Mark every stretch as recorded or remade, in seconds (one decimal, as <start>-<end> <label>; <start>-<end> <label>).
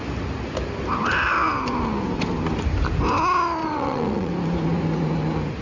0.0-3.6 recorded; 3.6-4.3 remade; 4.3-5.6 recorded